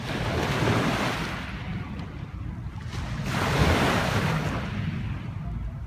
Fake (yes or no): no